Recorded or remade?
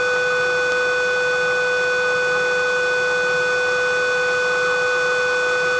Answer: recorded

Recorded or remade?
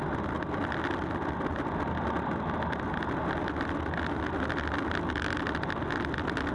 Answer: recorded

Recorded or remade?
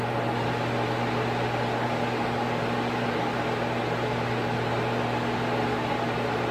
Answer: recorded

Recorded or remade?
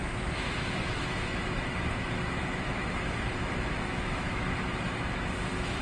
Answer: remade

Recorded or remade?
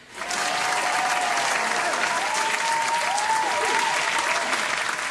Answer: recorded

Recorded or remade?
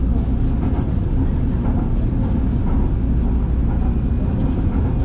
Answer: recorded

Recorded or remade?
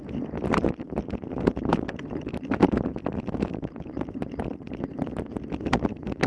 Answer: remade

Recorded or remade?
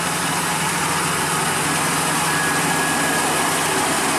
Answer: recorded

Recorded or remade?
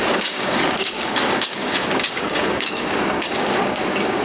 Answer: remade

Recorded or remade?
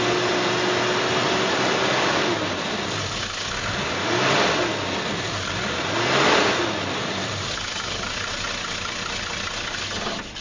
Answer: recorded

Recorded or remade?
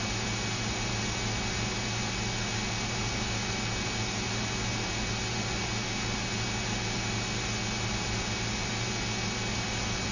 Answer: recorded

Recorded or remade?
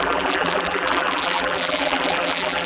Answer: remade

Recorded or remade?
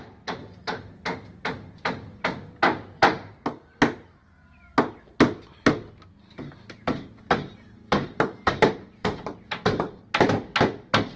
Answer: recorded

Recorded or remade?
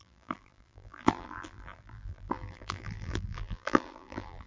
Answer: remade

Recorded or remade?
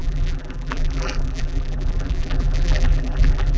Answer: remade